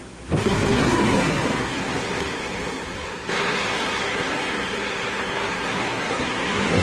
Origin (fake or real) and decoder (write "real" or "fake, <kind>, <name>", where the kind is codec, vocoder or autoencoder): fake, codec, SNAC